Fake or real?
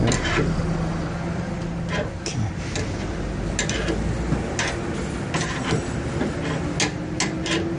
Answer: real